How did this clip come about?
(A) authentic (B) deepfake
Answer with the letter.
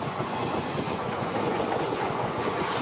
B